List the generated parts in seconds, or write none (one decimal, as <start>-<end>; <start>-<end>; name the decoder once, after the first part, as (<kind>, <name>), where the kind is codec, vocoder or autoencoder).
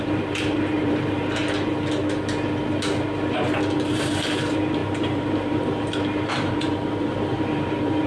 0.0-1.4 (vocoder, BigVGAN v2); 3.9-8.1